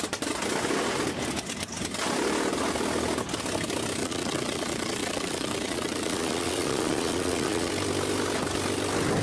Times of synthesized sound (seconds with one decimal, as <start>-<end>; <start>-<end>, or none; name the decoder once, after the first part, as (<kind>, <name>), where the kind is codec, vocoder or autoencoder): 4.0-7.7 (vocoder, Vocos)